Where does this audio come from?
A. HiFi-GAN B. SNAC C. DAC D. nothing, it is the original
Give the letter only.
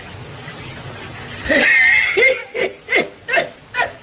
D